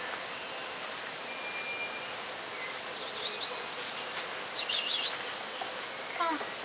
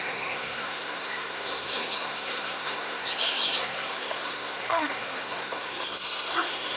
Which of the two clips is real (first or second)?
first